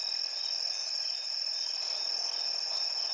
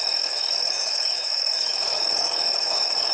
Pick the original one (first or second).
first